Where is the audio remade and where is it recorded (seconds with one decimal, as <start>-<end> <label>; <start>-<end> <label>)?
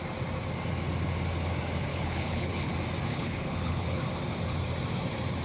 0.0-1.9 recorded; 1.9-2.7 remade; 2.7-3.1 recorded; 3.1-4.0 remade; 4.0-5.4 recorded